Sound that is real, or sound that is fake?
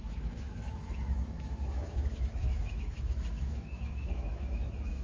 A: fake